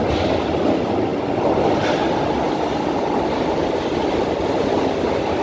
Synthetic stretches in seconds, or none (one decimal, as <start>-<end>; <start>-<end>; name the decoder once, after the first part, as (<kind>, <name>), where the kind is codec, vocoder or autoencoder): none